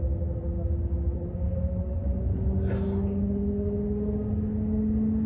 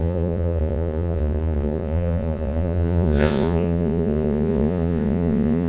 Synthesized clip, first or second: second